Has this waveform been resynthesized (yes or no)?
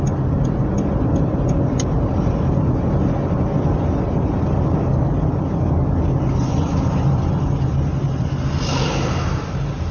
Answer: no